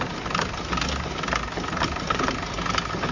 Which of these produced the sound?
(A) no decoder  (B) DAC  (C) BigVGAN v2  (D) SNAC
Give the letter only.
A